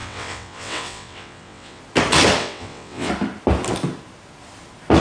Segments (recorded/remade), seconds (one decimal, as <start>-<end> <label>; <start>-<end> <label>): 0.0-1.8 remade; 1.8-2.4 recorded; 2.4-3.1 remade; 3.1-5.0 recorded